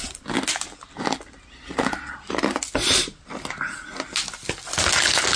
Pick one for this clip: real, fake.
real